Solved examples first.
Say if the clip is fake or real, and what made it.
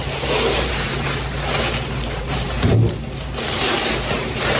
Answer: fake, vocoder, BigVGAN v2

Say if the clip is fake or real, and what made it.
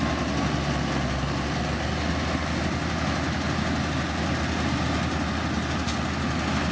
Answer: real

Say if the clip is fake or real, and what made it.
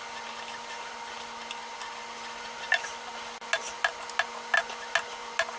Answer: real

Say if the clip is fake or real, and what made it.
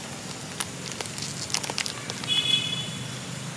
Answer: real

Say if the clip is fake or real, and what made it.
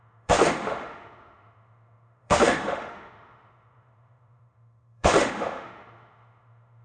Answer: fake, autoencoder, DAC-VAE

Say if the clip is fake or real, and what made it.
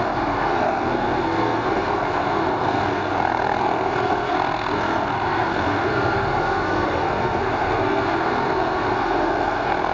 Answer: fake, codec, SNAC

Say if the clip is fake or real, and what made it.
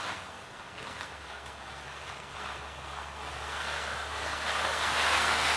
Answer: fake, codec, SNAC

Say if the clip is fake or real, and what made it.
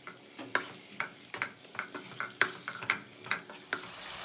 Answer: real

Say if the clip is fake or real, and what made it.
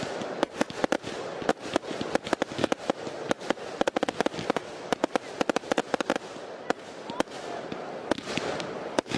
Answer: real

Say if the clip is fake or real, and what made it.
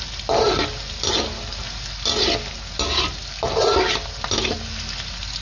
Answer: real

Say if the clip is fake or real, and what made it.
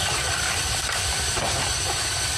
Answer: real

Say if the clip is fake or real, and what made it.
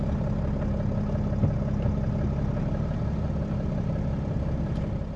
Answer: real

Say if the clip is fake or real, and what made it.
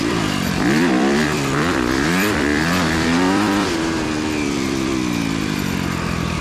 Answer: fake, vocoder, BigVGAN v2